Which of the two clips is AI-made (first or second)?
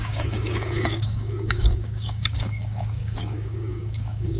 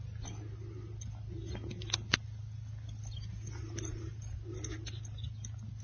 first